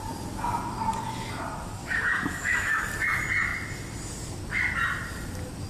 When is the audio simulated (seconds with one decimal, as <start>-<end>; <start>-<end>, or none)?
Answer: 1.8-2.8